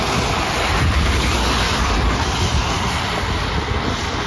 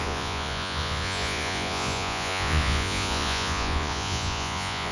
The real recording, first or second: first